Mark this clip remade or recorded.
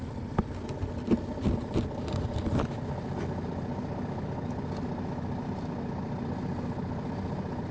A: recorded